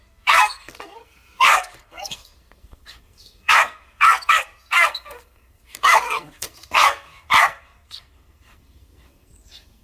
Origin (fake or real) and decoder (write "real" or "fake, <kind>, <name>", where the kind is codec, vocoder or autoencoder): fake, codec, SNAC